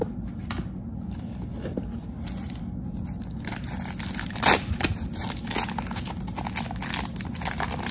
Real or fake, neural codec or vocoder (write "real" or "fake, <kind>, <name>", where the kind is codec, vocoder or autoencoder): real